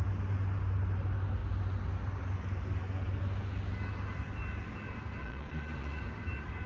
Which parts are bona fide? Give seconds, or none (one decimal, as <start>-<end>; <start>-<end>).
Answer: 0.0-5.2; 6.0-6.7